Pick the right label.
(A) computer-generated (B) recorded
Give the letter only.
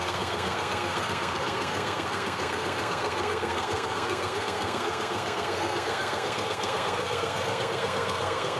A